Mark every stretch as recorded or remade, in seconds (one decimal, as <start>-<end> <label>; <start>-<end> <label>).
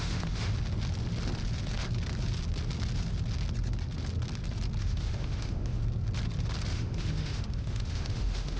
0.0-0.5 remade; 0.5-4.8 recorded; 4.8-5.8 remade; 5.8-6.7 recorded; 6.7-8.6 remade